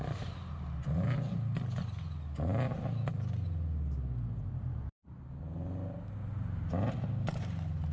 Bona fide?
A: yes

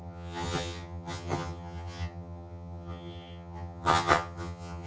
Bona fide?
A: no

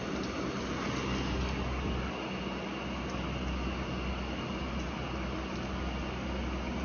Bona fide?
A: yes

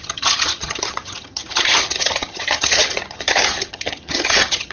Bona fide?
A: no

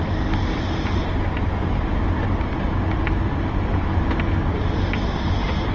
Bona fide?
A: yes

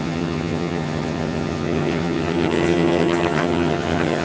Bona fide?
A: no